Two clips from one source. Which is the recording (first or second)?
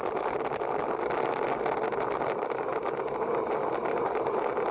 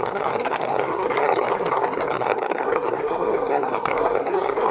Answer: first